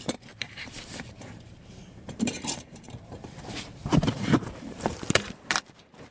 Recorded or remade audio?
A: remade